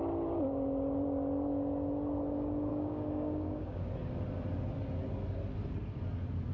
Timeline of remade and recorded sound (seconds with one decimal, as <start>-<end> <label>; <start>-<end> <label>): 0.0-2.7 recorded; 2.7-3.9 remade; 3.9-6.5 recorded